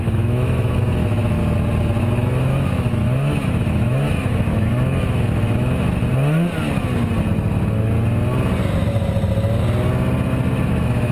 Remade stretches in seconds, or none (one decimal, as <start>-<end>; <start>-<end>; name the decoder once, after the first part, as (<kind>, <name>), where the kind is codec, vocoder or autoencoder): 0.0-1.4 (autoencoder, DAC-VAE); 2.0-6.1; 10.7-11.1